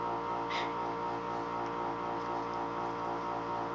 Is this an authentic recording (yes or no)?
yes